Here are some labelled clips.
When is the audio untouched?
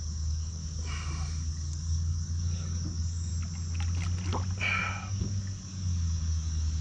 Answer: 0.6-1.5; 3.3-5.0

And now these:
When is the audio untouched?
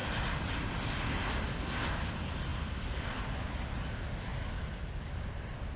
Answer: 0.0-2.5; 3.2-5.8